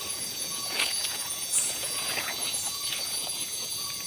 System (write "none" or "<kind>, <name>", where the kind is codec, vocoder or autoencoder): vocoder, Vocos